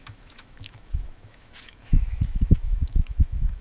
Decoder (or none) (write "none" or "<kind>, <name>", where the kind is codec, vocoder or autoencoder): autoencoder, DAC-VAE